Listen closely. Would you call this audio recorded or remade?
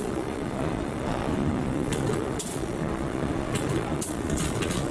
remade